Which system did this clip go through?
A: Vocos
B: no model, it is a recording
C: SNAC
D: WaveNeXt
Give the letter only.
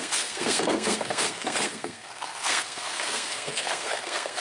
C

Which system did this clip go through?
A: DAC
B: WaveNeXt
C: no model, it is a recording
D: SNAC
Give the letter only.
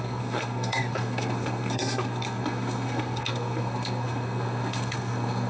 D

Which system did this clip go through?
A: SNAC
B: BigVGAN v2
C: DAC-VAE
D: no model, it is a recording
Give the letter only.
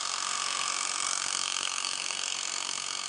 A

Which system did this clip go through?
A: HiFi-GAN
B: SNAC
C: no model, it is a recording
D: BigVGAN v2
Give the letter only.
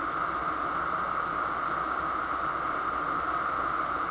C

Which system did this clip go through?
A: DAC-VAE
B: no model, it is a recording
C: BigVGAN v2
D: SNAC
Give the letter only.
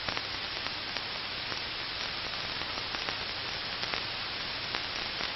B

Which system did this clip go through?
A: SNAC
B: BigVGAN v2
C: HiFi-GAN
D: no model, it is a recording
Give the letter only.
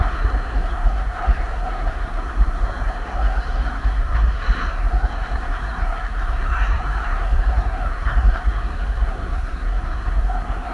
A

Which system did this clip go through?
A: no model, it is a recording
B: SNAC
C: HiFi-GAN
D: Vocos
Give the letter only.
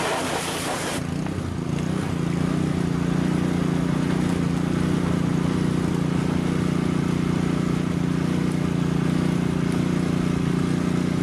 A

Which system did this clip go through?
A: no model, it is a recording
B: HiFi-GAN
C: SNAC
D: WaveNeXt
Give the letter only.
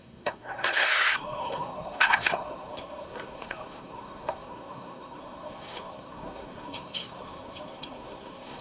C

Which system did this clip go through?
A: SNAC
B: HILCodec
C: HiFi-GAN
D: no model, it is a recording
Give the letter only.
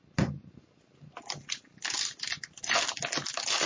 D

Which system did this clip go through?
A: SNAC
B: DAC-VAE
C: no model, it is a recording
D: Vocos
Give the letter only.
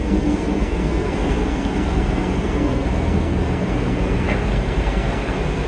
A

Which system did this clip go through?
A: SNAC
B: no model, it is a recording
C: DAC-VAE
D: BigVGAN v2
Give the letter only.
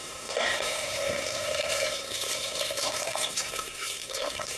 A